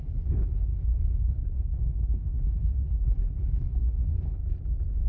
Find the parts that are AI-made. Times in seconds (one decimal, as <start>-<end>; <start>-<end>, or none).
0.0-4.4